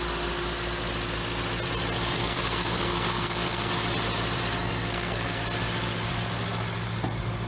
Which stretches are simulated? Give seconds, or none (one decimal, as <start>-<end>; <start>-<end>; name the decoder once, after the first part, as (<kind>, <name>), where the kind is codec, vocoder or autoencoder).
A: 2.2-3.7 (codec, SNAC); 4.6-5.4